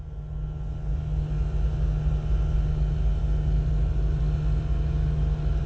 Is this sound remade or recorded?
recorded